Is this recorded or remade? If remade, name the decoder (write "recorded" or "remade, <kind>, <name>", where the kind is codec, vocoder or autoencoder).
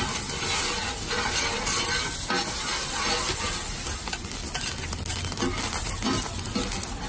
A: recorded